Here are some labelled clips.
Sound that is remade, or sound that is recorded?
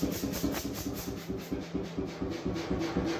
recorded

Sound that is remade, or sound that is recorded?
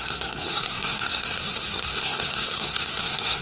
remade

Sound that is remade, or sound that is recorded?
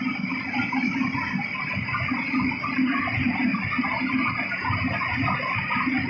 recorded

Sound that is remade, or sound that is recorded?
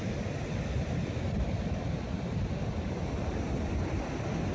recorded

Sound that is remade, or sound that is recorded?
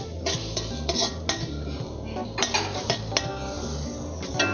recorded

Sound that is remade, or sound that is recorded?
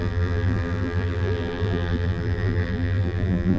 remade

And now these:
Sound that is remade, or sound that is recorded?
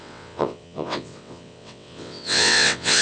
remade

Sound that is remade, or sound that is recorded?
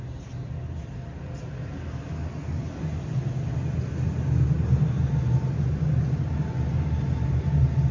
recorded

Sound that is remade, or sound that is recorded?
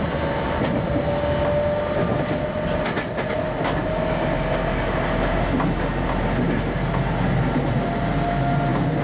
recorded